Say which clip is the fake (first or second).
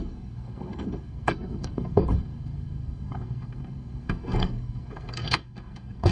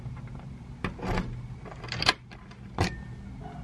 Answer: first